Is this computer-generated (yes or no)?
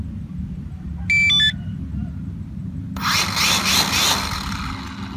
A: no